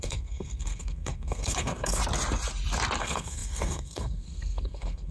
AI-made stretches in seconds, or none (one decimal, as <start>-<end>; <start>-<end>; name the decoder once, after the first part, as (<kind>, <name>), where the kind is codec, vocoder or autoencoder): 0.0-2.0 (codec, SNAC); 3.0-5.1